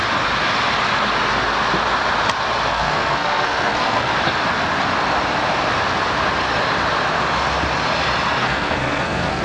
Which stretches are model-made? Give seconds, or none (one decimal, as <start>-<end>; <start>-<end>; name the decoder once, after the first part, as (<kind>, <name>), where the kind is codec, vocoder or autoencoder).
2.7-4.1 (codec, SNAC); 8.4-9.4

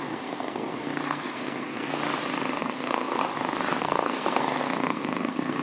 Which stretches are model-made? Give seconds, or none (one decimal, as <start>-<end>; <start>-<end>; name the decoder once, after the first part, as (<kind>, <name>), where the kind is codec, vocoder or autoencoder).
0.0-2.0 (codec, SNAC); 2.6-3.2; 3.8-5.6

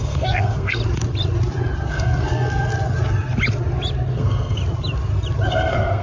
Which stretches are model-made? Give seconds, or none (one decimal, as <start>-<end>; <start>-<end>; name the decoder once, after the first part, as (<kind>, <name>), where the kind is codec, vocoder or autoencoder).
0.0-0.8 (codec, SNAC); 1.9-2.7; 4.1-4.6; 5.5-6.0

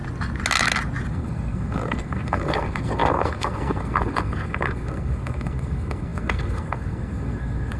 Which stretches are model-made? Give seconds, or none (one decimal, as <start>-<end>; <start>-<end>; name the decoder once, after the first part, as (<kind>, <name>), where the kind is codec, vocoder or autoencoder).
1.1-7.8 (codec, SNAC)

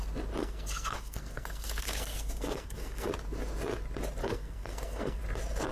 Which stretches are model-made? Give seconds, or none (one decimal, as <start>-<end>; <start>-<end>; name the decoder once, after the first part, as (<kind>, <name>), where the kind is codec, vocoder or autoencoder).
0.4-3.1 (codec, SNAC); 4.2-5.2

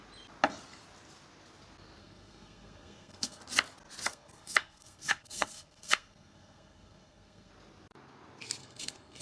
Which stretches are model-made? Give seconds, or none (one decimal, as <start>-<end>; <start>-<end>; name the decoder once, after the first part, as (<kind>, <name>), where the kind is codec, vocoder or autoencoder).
2.0-3.4 (codec, SNAC); 4.1-7.5; 8.6-9.2

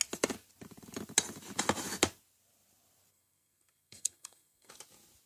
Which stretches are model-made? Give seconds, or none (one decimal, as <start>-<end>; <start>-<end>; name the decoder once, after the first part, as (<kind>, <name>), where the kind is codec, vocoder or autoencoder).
3.1-4.7 (codec, SNAC)

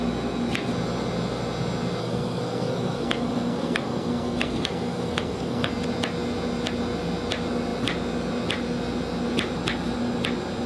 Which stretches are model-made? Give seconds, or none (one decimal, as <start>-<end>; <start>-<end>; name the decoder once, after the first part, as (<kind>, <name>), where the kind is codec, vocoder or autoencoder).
2.0-5.7 (codec, SNAC)